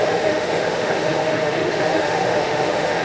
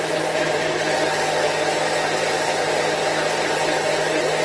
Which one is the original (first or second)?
second